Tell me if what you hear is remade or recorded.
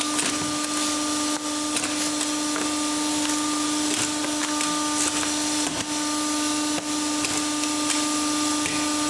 recorded